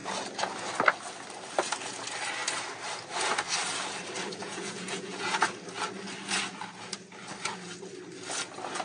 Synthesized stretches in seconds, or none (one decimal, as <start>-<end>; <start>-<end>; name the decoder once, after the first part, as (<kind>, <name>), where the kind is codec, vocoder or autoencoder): 4.4-5.4 (vocoder, Vocos)